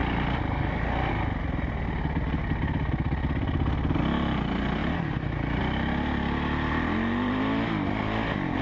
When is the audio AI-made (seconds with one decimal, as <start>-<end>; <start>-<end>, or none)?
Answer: 4.8-5.6